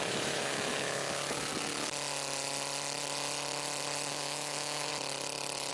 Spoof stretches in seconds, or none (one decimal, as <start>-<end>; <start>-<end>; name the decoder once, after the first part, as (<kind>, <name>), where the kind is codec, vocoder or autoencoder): 0.0-1.5 (autoencoder, DAC-VAE); 4.1-4.9